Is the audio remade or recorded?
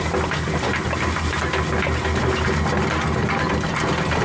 recorded